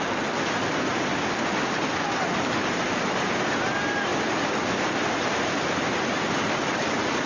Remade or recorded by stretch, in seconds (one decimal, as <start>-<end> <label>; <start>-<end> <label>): 0.0-0.9 remade; 0.9-3.5 recorded; 3.5-7.3 remade